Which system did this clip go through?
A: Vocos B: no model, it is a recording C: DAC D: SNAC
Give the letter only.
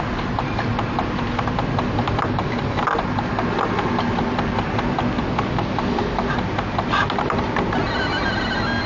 B